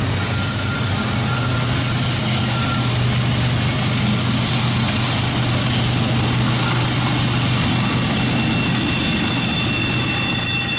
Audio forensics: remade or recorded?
recorded